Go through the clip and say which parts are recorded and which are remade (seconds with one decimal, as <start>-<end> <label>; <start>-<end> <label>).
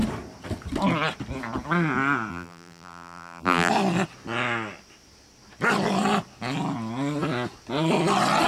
0.0-2.3 recorded; 2.3-3.7 remade; 3.7-8.5 recorded